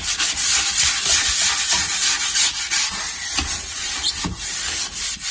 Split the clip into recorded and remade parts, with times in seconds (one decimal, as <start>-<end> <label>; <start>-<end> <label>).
0.0-5.3 recorded